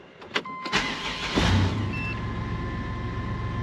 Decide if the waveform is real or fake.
real